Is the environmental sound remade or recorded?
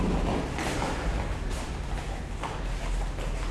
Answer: recorded